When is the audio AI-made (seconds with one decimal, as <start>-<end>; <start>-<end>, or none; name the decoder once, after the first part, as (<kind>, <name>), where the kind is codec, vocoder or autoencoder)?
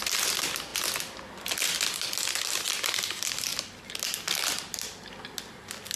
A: none